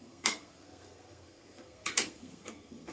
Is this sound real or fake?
fake